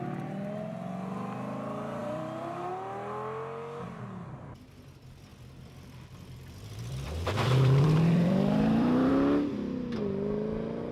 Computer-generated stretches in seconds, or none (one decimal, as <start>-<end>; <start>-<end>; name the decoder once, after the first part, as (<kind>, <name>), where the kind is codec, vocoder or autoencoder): 2.0-2.7 (vocoder, BigVGAN v2); 5.3-9.1